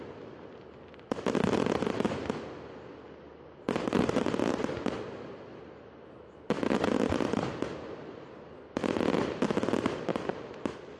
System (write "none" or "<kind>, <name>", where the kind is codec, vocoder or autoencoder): none